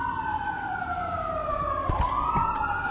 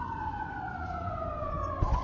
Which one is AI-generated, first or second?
second